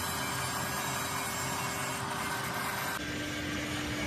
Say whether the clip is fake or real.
real